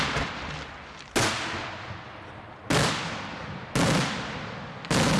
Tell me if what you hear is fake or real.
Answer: real